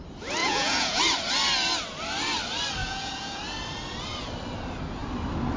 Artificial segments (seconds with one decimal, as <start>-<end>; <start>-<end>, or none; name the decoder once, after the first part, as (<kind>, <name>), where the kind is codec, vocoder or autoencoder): 0.4-1.0 (vocoder, Vocos); 2.8-3.4